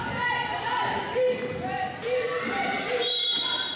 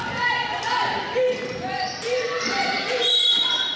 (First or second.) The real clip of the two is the first